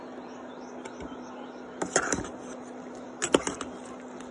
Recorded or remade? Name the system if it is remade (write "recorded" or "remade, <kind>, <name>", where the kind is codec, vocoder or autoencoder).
recorded